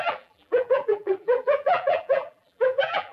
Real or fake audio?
fake